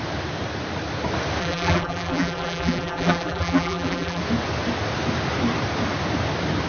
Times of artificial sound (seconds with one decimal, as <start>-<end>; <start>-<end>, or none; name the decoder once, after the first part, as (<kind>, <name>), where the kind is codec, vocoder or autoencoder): 1.4-4.2 (vocoder, BigVGAN v2)